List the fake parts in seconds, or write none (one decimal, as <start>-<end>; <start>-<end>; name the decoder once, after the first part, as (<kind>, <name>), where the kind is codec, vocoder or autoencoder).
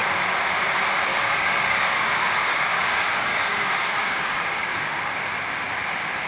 1.1-4.9 (codec, DAC)